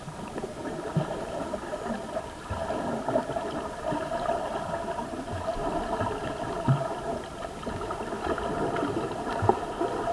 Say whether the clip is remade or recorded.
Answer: remade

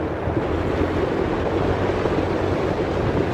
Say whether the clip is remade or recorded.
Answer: recorded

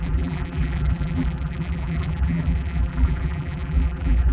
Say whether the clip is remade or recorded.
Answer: remade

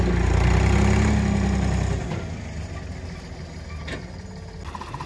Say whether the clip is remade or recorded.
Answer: recorded